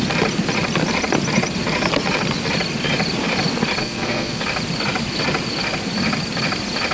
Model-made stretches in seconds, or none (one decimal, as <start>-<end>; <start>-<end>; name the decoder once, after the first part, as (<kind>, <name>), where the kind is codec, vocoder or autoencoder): 3.8-4.4 (codec, SNAC)